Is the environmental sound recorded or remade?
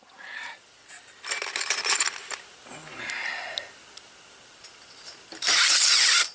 recorded